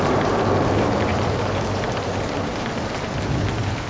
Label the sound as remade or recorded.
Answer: recorded